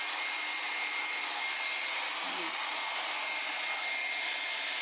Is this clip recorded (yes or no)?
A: yes